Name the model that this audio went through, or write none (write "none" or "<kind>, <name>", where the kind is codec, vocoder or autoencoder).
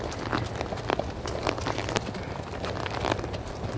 none